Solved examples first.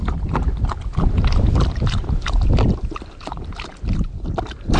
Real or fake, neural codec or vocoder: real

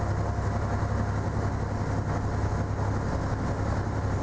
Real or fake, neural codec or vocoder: real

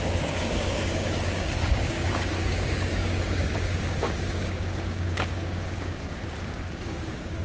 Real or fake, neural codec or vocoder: fake, codec, DAC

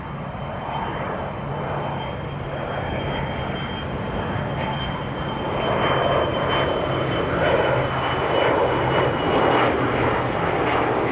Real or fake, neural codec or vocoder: real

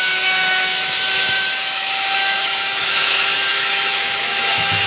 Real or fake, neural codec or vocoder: fake, autoencoder, DAC-VAE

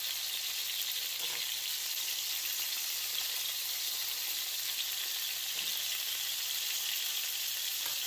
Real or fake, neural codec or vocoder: fake, vocoder, BigVGAN v2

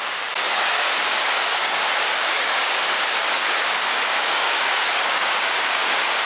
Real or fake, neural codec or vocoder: fake, codec, DAC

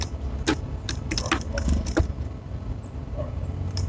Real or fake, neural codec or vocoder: real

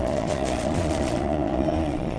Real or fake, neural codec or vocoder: fake, vocoder, Vocos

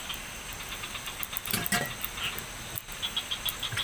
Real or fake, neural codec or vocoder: real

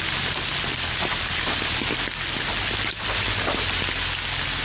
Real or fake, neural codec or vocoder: real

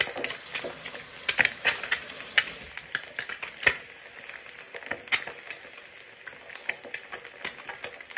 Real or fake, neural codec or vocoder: real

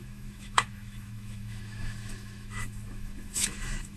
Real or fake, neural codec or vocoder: fake, autoencoder, DAC-VAE